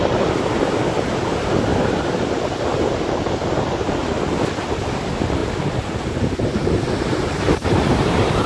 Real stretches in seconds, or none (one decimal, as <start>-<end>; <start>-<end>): 0.0-6.6; 7.4-8.5